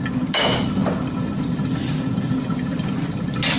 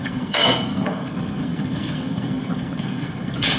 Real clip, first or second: first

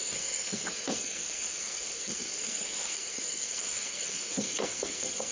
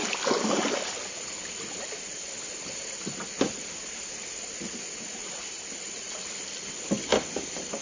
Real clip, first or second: second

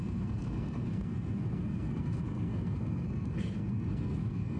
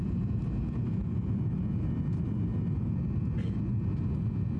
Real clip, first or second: second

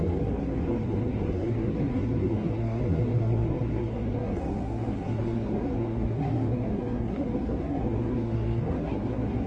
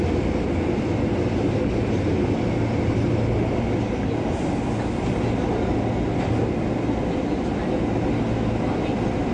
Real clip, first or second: second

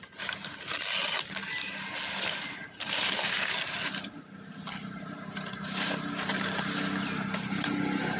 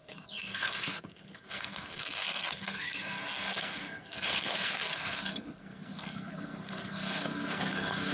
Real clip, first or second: first